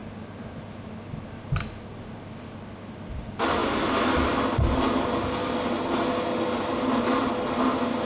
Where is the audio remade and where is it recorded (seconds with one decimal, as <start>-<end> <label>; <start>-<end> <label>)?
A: 0.0-8.0 recorded